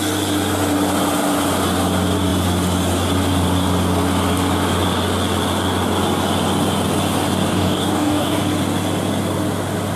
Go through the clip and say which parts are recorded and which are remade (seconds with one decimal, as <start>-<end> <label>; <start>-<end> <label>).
0.0-7.5 recorded; 7.5-8.4 remade; 8.4-10.0 recorded